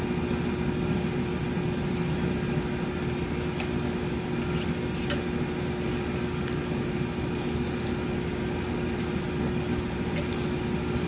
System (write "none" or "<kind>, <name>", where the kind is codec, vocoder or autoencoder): none